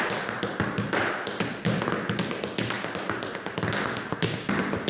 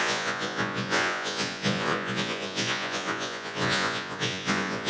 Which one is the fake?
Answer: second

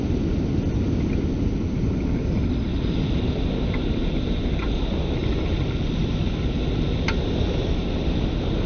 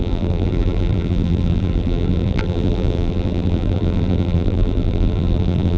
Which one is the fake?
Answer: second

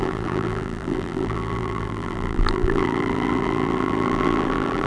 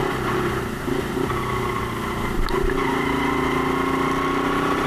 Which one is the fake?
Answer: first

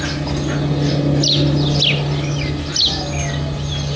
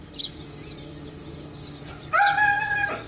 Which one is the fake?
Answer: second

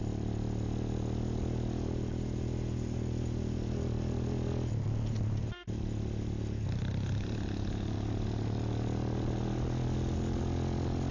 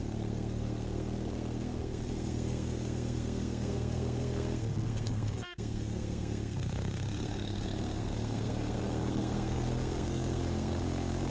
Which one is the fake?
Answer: second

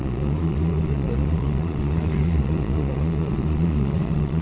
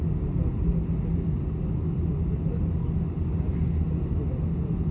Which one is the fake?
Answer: first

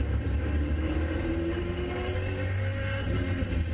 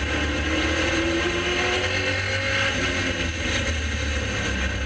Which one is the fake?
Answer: first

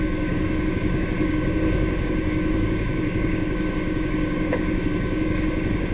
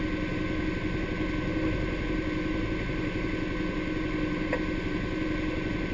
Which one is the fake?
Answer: first